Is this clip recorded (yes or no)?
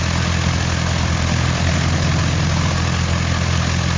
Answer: yes